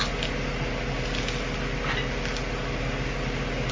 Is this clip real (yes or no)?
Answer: yes